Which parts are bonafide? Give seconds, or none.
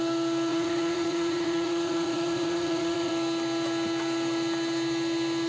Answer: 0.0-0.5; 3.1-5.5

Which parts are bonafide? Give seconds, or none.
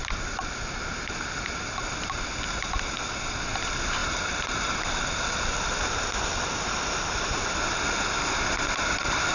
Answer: 0.0-9.3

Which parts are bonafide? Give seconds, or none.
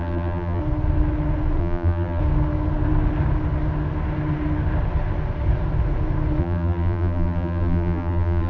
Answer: 0.6-1.6; 2.2-6.4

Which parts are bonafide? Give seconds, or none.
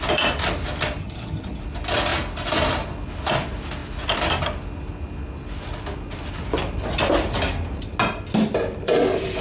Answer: 0.0-1.0; 1.6-9.4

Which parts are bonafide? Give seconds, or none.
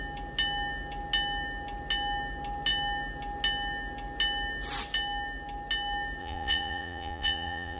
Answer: 0.0-6.2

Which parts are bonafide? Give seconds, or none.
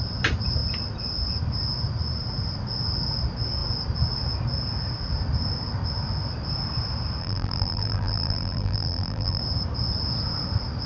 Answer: 0.0-7.2; 9.4-10.9